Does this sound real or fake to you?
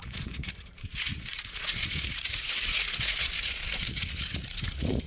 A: fake